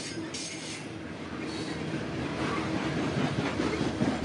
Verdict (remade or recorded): recorded